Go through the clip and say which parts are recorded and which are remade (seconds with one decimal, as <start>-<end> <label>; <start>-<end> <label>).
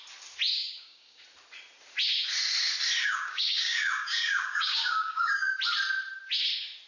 0.0-0.5 recorded; 0.5-1.2 remade; 1.2-3.0 recorded; 3.0-5.6 remade; 5.6-6.9 recorded